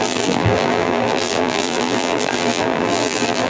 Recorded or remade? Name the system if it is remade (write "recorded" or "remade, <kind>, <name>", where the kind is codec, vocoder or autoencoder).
remade, vocoder, BigVGAN v2